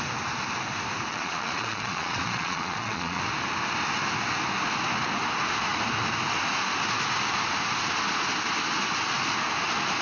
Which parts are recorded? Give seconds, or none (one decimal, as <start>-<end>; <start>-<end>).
0.0-1.1; 3.2-10.0